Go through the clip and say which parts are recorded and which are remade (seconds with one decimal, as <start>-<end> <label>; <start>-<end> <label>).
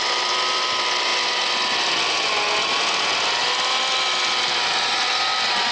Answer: 0.0-5.7 recorded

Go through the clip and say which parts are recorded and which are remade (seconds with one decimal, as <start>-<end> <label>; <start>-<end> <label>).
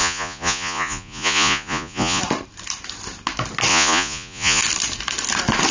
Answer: 0.0-2.2 remade; 2.2-3.7 recorded; 3.7-4.6 remade; 4.6-5.7 recorded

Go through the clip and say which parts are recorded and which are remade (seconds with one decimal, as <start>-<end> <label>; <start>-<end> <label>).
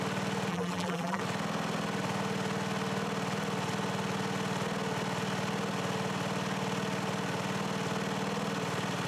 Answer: 0.0-0.5 recorded; 0.5-1.2 remade; 1.2-9.1 recorded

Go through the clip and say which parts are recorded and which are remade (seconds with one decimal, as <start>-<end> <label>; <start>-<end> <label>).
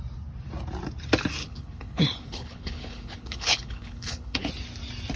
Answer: 0.0-1.4 recorded; 1.4-4.5 remade; 4.5-5.2 recorded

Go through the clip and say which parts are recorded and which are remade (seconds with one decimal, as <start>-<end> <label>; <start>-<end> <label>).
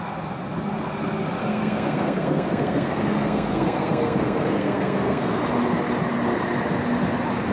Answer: 0.0-1.4 recorded; 1.4-5.4 remade; 5.4-7.5 recorded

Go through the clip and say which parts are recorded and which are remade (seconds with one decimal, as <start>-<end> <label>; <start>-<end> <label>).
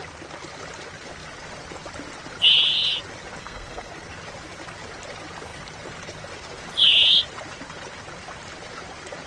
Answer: 0.0-3.4 recorded; 3.4-3.9 remade; 3.9-9.3 recorded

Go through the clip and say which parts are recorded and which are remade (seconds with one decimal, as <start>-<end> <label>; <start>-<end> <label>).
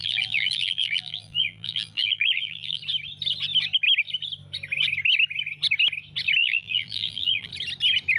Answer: 0.0-2.8 remade; 2.8-6.4 recorded; 6.4-7.5 remade; 7.5-8.2 recorded